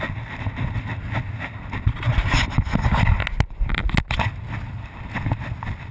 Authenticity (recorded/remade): recorded